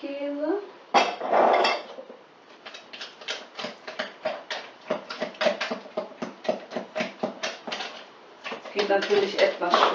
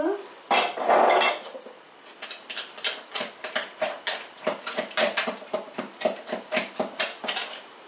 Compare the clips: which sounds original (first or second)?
second